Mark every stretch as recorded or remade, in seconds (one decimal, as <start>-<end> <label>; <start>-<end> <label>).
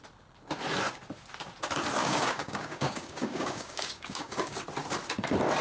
0.0-2.0 recorded; 2.0-4.6 remade; 4.6-5.6 recorded